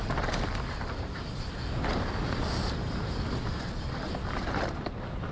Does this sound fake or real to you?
real